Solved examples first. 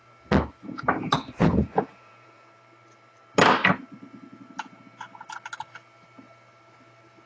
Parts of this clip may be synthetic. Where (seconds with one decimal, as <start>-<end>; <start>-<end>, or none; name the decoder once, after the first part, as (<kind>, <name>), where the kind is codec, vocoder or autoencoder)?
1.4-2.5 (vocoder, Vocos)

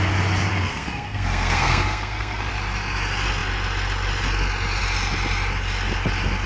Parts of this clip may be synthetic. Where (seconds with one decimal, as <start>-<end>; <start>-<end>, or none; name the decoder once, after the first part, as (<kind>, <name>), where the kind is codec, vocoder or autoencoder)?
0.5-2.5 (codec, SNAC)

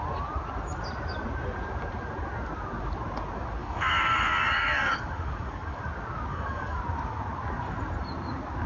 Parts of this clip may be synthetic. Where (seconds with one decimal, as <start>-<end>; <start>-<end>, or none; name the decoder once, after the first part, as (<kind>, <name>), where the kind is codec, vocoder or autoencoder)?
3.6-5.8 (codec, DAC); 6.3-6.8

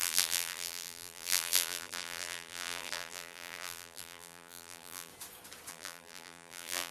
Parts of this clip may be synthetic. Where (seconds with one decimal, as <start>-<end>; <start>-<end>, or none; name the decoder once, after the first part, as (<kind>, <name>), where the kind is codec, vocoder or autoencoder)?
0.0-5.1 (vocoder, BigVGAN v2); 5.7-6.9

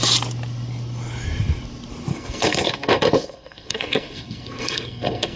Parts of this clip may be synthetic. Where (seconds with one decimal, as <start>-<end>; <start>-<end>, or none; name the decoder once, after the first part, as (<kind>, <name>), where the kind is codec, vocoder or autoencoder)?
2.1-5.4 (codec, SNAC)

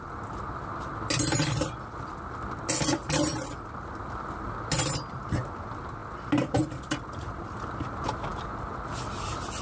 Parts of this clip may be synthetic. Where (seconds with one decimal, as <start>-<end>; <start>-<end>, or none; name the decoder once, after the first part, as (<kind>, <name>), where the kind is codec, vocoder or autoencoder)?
none